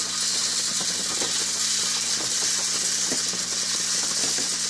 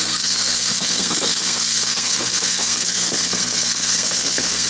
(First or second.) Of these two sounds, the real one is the first